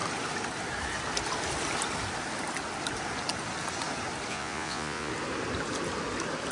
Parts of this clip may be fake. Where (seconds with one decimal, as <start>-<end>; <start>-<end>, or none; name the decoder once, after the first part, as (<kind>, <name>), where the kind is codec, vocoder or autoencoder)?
4.3-5.1 (vocoder, Vocos)